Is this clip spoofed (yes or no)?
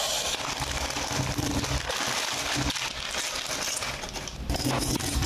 no